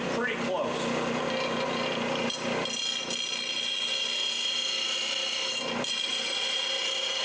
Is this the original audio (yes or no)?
yes